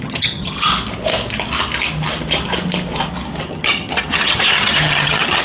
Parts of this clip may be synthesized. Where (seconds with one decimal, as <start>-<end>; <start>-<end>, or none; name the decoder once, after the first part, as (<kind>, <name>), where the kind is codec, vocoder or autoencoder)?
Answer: 0.0-0.7 (vocoder, HiFi-GAN); 3.4-5.4